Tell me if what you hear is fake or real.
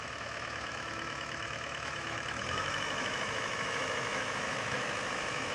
fake